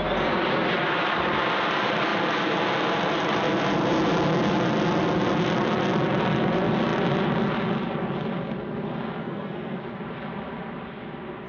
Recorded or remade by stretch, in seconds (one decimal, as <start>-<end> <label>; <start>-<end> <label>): 0.0-9.2 recorded; 9.2-9.8 remade; 9.8-11.5 recorded